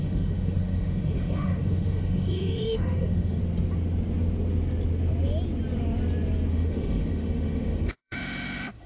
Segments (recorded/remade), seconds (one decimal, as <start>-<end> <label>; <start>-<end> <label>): 0.0-3.4 remade; 3.4-6.5 recorded; 6.5-8.9 remade

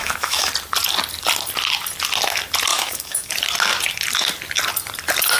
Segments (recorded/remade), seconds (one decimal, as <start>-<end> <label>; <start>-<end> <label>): 0.0-0.5 remade; 0.5-2.7 recorded; 2.7-3.3 remade; 3.3-5.4 recorded

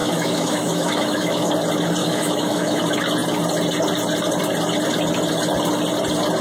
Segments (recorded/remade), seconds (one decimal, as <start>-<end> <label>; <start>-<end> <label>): 0.0-1.5 remade; 1.5-2.0 recorded; 2.0-2.8 remade; 2.8-6.4 recorded

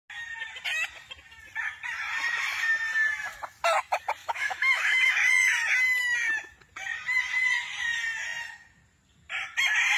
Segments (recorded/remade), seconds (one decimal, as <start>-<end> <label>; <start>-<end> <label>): 0.0-4.2 recorded; 4.2-5.1 remade; 5.1-10.0 recorded

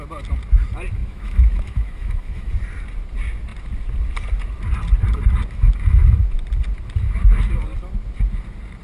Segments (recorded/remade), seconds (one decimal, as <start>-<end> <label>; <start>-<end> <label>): 0.0-1.0 recorded; 1.0-2.5 remade; 2.5-8.8 recorded

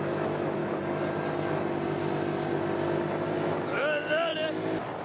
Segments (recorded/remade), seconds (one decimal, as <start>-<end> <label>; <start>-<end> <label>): 0.0-0.6 remade; 0.6-3.6 recorded; 3.6-4.3 remade; 4.3-5.0 recorded

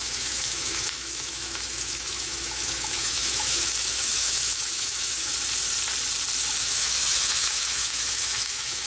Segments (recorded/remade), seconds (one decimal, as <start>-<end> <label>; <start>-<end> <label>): 0.0-5.3 remade; 5.3-6.6 recorded; 6.6-8.9 remade

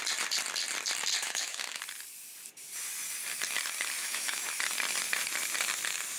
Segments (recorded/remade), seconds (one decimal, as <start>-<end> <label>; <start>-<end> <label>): 0.0-1.2 recorded; 1.2-1.8 remade; 1.8-4.0 recorded; 4.0-4.5 remade; 4.5-6.2 recorded